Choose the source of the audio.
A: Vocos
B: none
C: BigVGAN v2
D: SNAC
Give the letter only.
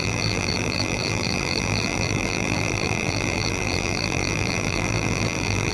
C